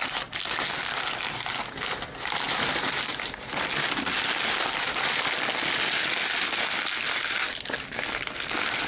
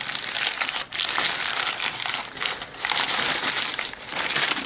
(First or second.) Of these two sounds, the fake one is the second